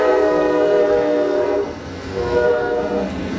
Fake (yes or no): yes